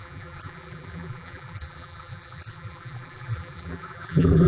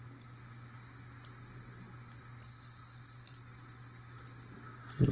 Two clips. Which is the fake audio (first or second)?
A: first